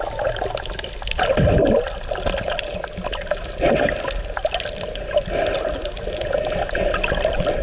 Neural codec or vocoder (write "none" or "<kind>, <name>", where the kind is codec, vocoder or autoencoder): none